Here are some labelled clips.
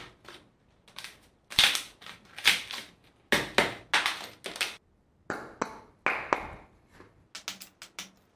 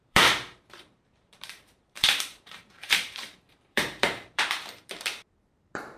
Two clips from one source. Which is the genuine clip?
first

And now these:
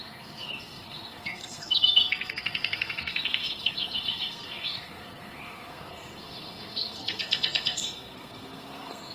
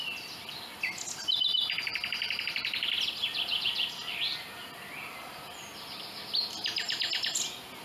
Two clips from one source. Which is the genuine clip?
second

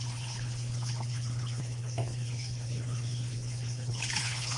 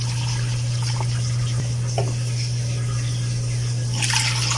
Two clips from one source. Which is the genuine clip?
second